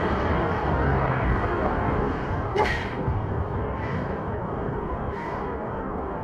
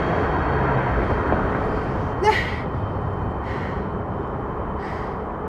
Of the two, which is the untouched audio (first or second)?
second